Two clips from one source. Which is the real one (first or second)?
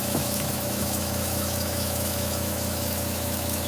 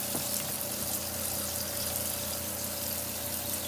second